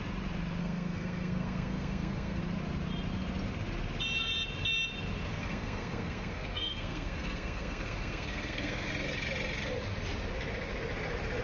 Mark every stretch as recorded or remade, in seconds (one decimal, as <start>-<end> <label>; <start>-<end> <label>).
0.0-0.6 recorded; 0.6-2.4 remade; 2.4-5.4 recorded; 5.4-8.9 remade; 8.9-11.4 recorded